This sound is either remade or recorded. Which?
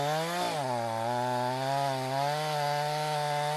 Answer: recorded